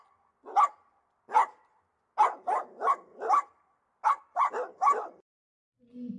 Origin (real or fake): real